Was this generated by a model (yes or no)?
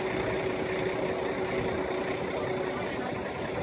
no